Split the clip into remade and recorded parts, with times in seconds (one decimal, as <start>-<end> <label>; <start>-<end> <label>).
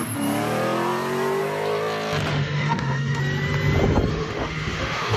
0.0-2.3 recorded; 2.3-3.2 remade; 3.2-4.1 recorded; 4.1-5.2 remade